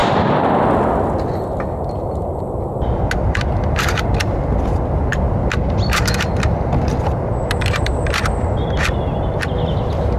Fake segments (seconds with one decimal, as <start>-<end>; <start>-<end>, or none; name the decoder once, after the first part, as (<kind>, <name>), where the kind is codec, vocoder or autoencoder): none